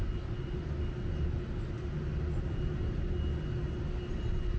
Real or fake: real